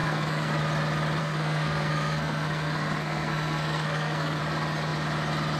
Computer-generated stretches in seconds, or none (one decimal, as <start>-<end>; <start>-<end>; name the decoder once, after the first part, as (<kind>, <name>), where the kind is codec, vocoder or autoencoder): 0.0-0.6 (codec, SNAC); 1.2-4.4